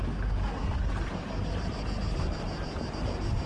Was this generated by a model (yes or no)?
no